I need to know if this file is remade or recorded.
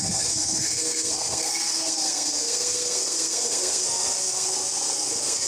remade